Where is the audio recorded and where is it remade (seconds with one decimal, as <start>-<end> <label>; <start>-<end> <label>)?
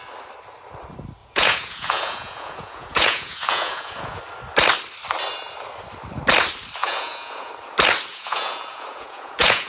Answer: 0.0-1.2 recorded; 1.2-4.2 remade; 4.2-6.8 recorded; 6.8-7.5 remade; 7.5-8.1 recorded; 8.1-9.7 remade